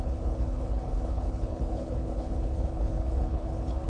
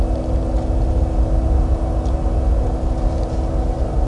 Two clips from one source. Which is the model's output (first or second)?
first